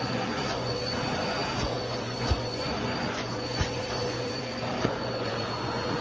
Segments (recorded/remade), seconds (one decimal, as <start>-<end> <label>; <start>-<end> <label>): 0.0-6.0 remade